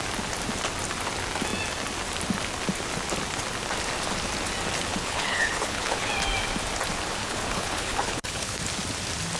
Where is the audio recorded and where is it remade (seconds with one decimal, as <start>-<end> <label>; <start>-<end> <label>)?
0.0-4.9 recorded; 4.9-6.1 remade; 6.1-7.2 recorded; 7.2-8.6 remade; 8.6-9.4 recorded